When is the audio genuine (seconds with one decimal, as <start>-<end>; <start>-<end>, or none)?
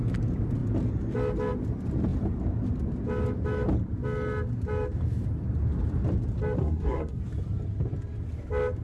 0.0-6.6; 7.2-8.8